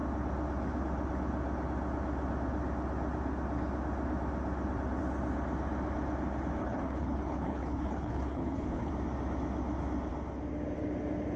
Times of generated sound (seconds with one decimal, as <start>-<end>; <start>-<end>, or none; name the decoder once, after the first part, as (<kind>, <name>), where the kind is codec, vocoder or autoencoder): 6.6-8.9 (codec, HILCodec)